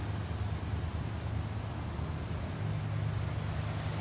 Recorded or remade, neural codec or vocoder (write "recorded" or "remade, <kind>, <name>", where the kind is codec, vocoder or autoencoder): recorded